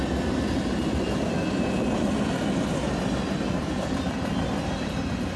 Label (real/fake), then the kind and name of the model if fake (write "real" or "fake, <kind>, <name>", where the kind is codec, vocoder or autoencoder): real